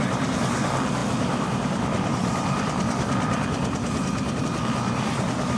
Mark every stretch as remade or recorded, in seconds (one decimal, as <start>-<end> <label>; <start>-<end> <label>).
0.0-1.0 recorded; 1.0-4.4 remade; 4.4-5.6 recorded